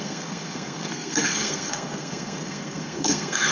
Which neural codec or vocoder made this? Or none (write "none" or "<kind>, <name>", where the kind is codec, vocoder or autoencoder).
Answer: codec, SNAC